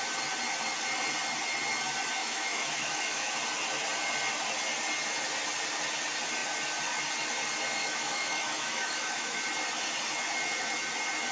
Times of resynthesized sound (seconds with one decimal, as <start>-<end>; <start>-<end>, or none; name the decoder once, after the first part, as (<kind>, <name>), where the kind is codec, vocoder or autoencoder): 2.2-3.3 (autoencoder, DAC-VAE); 7.8-9.4